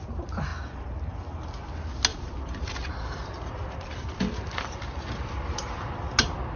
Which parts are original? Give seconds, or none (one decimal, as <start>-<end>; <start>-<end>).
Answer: 0.0-2.1; 6.1-6.6